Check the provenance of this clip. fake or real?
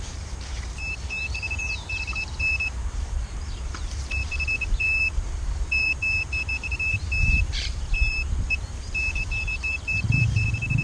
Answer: fake